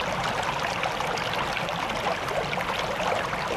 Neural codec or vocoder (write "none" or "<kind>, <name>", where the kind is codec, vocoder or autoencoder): none